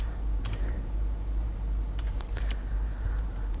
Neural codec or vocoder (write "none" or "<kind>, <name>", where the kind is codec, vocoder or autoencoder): vocoder, BigVGAN v2